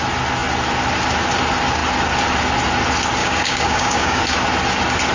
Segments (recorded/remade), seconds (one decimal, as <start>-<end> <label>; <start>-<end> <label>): 0.0-3.2 recorded; 3.2-4.2 remade; 4.2-5.1 recorded